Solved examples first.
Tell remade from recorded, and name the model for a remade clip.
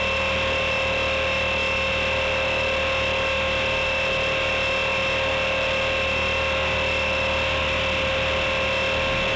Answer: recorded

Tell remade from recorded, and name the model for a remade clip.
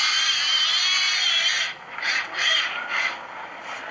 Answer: recorded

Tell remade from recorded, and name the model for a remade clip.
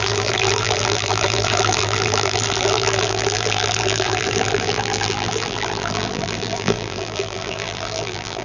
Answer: remade, vocoder, BigVGAN v2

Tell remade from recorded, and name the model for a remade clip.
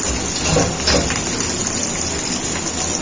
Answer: recorded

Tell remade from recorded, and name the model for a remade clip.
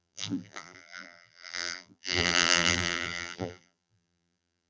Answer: remade, vocoder, BigVGAN v2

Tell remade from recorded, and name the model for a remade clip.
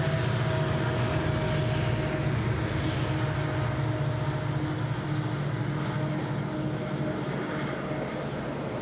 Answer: recorded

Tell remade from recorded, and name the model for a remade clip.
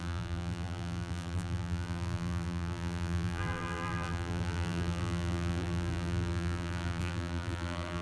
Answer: remade, vocoder, BigVGAN v2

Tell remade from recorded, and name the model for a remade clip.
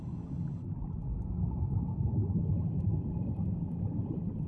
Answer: recorded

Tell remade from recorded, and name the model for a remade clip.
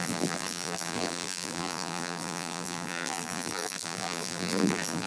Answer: remade, vocoder, BigVGAN v2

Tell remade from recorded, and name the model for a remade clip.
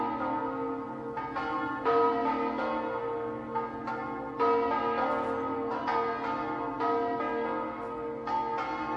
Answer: recorded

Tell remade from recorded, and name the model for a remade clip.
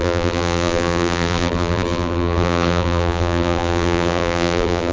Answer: remade, vocoder, BigVGAN v2